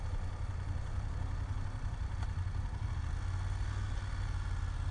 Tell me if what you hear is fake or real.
real